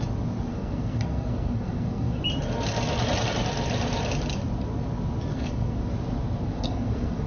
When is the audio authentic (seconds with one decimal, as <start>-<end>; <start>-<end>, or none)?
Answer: 0.0-0.5; 2.2-5.3; 5.8-6.5